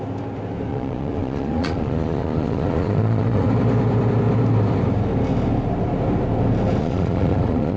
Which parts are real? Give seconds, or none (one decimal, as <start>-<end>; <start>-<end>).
0.0-0.7; 3.5-6.8

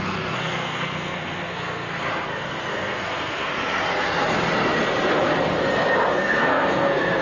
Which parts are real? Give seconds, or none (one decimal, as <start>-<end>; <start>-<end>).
3.5-6.1

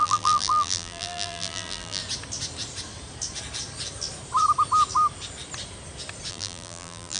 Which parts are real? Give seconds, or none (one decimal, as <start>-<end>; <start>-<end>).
2.0-6.3